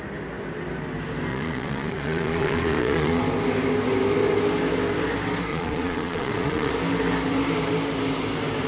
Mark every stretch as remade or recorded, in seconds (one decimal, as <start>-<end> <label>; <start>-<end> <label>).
0.0-1.3 recorded; 1.3-3.2 remade; 3.2-5.5 recorded; 5.5-6.7 remade; 6.7-8.7 recorded